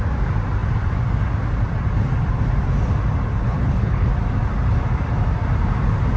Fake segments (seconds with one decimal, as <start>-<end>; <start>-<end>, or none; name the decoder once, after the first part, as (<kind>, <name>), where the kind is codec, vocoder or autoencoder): 3.4-4.1 (codec, HILCodec)